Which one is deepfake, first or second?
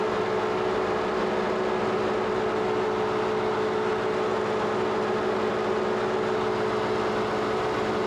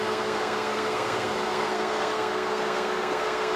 second